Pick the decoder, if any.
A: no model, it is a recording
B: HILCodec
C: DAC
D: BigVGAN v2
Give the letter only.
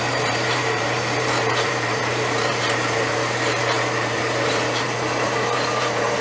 D